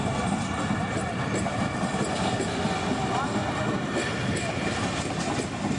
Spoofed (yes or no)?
no